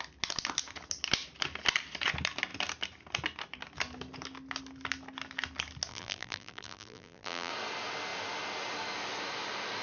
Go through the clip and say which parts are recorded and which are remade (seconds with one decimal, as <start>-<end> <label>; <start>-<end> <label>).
0.0-5.9 recorded; 5.9-7.5 remade; 7.5-9.8 recorded